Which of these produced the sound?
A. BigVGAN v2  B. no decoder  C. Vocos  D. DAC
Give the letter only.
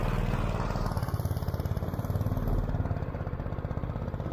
A